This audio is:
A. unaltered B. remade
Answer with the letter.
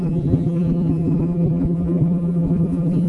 B